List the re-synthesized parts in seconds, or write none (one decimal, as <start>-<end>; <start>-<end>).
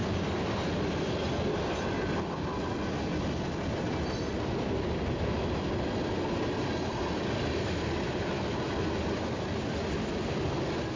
none